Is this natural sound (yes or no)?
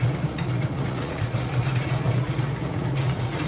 no